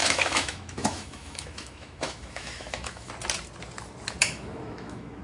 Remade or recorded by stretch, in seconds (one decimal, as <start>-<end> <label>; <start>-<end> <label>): 0.0-3.1 remade; 3.1-4.2 recorded; 4.2-5.2 remade

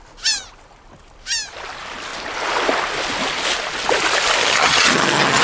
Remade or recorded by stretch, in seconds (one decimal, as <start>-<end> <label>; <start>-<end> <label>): 0.0-4.4 recorded; 4.4-5.4 remade

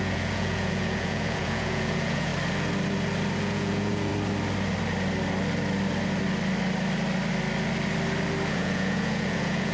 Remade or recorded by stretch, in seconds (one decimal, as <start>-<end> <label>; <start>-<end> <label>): 0.0-2.3 remade; 2.3-3.4 recorded; 3.4-4.1 remade; 4.1-8.5 recorded; 8.5-9.7 remade